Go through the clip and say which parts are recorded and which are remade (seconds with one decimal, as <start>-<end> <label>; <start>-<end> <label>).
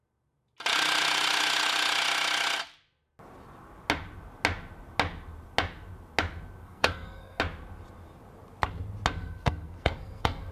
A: 0.0-6.6 recorded; 6.6-7.4 remade; 7.4-9.2 recorded; 9.2-10.5 remade